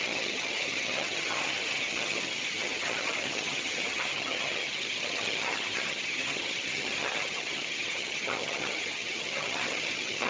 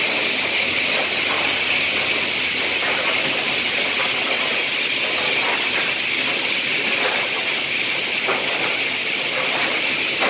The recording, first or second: second